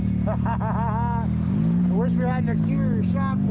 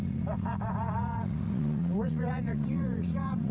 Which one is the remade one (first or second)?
second